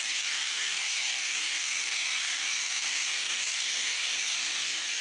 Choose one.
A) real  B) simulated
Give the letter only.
B